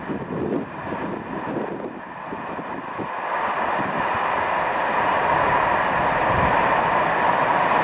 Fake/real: real